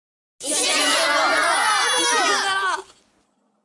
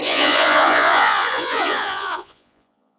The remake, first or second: second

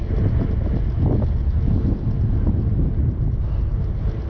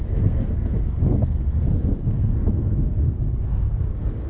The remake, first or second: second